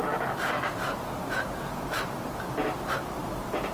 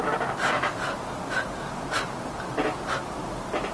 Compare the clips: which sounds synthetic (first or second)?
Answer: first